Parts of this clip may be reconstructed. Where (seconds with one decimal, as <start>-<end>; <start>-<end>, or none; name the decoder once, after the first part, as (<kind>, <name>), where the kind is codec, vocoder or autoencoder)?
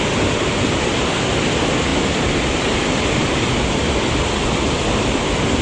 none